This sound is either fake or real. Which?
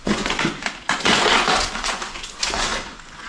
fake